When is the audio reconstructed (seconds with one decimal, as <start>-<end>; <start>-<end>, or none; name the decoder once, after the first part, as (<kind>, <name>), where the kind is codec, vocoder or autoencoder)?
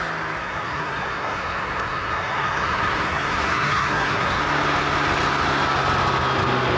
0.4-4.4 (codec, SNAC)